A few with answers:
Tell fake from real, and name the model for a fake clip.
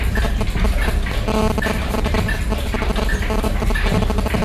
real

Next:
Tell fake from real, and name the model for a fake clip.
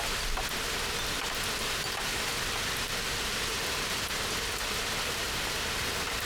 real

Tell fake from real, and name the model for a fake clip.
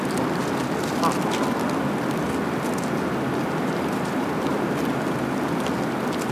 real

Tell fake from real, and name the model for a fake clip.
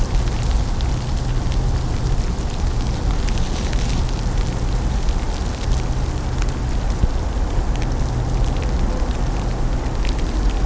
real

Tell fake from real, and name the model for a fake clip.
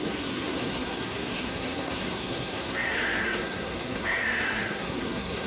fake, codec, SNAC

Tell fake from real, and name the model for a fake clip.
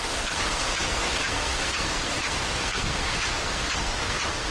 fake, codec, SNAC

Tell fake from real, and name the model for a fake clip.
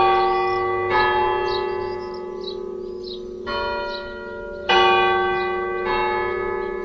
real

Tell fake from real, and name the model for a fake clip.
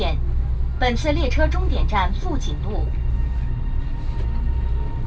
real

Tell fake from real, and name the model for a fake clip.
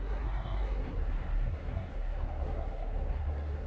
fake, codec, SNAC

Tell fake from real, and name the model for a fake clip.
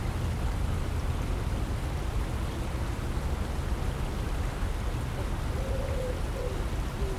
real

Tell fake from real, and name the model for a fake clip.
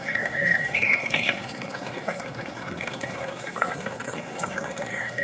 fake, codec, SNAC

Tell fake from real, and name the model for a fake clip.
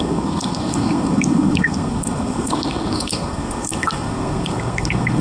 fake, codec, SNAC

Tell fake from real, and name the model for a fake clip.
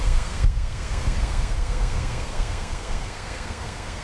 fake, codec, SNAC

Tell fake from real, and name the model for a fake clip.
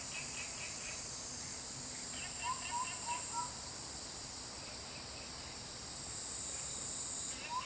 real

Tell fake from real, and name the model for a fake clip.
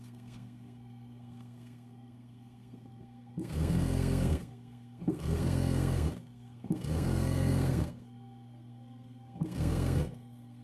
fake, codec, SNAC